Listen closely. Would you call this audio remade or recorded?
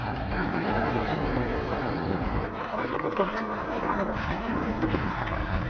remade